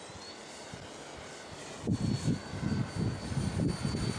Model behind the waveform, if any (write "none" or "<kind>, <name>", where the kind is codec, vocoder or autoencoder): none